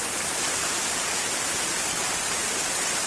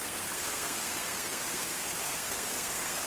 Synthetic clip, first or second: second